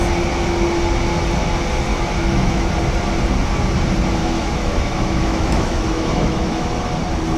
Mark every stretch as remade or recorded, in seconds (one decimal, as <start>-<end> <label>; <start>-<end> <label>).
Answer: 0.0-1.9 recorded; 1.9-2.7 remade; 2.7-4.2 recorded; 4.2-6.7 remade; 6.7-7.4 recorded